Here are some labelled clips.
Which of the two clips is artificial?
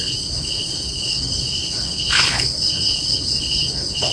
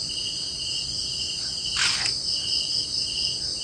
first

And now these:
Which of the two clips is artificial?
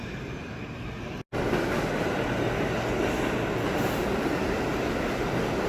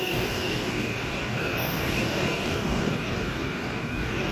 second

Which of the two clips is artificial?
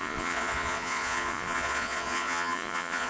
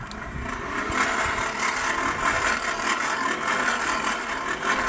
first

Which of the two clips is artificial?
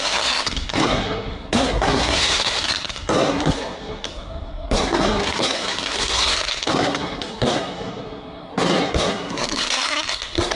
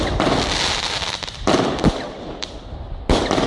first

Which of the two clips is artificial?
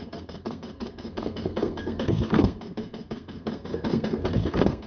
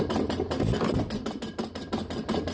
first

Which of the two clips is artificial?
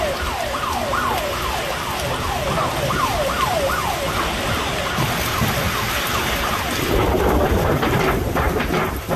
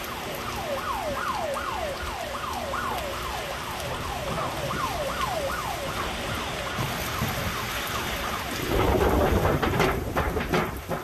first